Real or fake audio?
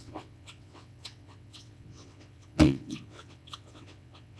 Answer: fake